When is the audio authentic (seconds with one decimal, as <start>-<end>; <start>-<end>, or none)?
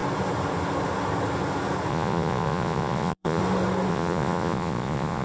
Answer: 0.0-1.9; 3.4-3.9